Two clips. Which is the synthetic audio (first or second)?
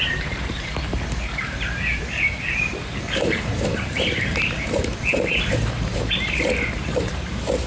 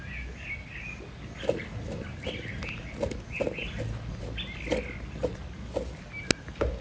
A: first